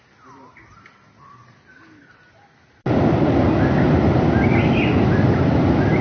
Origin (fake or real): real